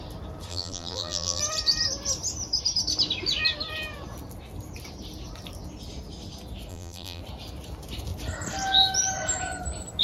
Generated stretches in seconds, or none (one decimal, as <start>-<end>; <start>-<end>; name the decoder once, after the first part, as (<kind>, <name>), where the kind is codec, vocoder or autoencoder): 0.5-1.4 (vocoder, BigVGAN v2); 6.7-7.2